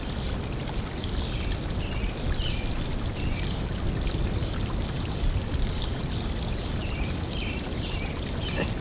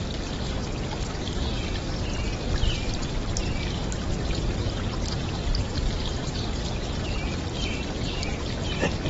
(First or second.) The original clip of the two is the second